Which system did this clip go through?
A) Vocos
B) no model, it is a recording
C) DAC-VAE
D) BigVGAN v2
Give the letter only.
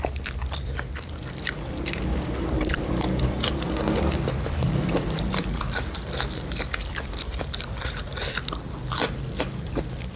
B